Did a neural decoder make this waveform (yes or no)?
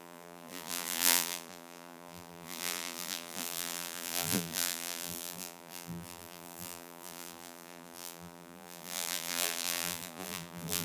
yes